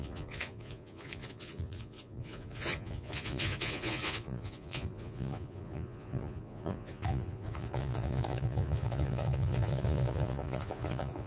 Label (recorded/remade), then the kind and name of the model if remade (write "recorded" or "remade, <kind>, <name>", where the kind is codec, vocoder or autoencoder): remade, vocoder, Vocos